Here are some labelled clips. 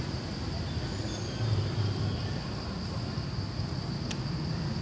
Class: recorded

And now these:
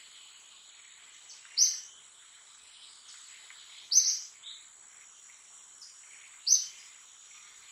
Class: recorded